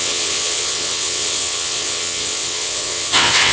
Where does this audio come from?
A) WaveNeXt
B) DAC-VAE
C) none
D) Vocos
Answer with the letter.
A